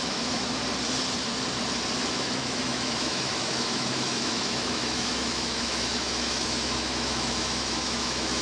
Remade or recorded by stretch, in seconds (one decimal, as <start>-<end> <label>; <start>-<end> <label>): 0.0-0.6 remade; 0.6-2.1 recorded; 2.1-8.4 remade